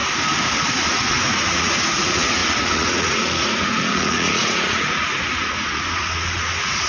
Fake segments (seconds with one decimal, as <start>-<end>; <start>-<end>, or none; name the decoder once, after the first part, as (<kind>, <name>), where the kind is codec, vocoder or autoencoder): 0.7-6.9 (vocoder, Vocos)